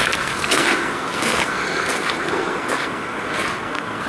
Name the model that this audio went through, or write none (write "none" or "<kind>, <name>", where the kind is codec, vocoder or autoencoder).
codec, SNAC